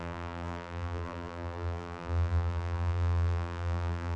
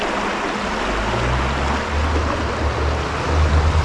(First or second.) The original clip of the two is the second